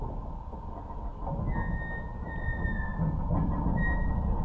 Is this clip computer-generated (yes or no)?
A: no